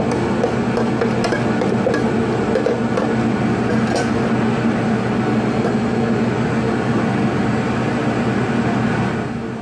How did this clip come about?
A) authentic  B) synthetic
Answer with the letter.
A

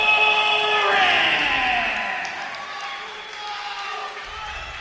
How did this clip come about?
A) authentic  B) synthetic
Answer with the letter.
A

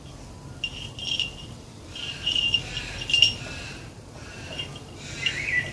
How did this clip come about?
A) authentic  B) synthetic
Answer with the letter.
B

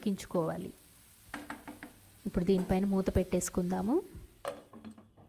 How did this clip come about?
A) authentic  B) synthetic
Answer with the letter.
A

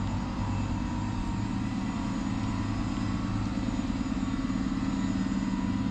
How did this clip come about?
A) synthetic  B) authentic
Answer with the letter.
B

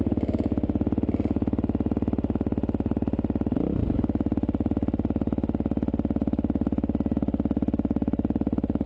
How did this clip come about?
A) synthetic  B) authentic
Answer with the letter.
B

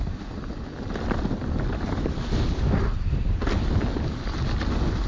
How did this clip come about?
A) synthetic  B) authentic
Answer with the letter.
B